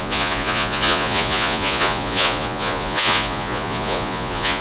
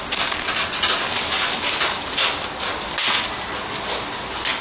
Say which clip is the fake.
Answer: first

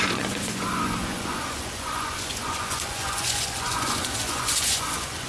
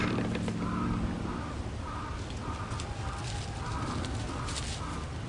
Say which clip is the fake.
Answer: first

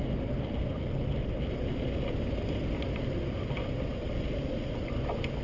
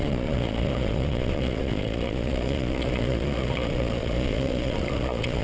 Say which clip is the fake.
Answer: second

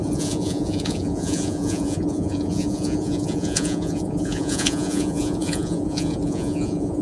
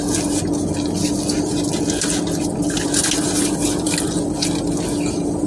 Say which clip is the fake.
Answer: first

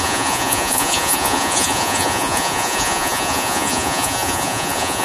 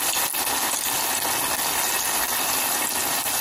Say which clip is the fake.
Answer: first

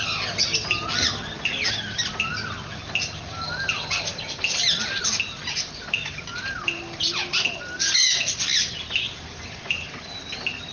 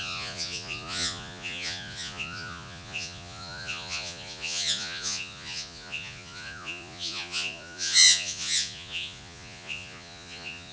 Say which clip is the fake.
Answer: second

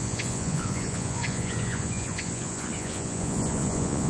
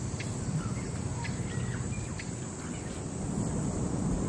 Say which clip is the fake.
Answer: first